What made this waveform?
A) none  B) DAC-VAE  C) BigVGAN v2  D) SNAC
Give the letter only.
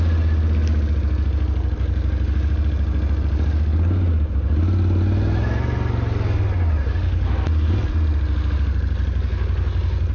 A